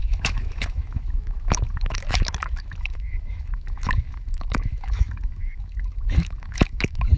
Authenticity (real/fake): fake